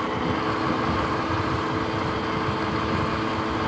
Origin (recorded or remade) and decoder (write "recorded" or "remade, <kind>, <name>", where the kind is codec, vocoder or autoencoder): recorded